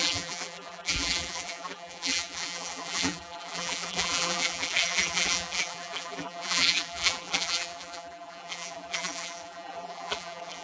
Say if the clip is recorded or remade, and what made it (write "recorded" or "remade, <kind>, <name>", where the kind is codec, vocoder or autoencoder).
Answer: remade, vocoder, BigVGAN v2